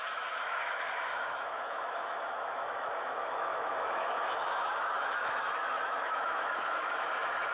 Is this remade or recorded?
remade